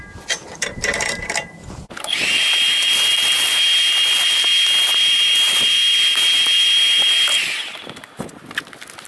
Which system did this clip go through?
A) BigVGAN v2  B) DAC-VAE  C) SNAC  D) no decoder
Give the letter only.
D